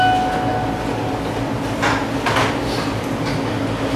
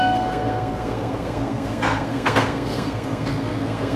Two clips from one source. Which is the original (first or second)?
first